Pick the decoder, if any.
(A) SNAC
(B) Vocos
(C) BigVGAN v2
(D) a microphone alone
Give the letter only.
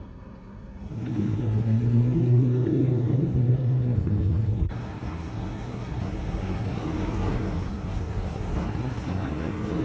A